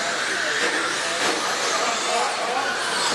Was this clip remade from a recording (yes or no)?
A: no